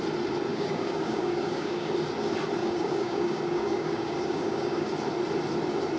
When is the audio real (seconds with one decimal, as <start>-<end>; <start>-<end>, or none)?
0.0-0.5; 1.9-2.6; 4.9-6.0